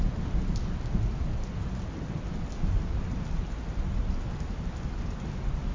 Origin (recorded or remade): recorded